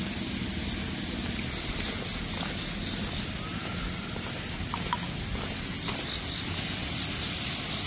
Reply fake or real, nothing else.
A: real